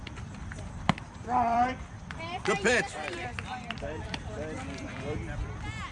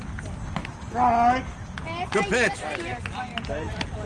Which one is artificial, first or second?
first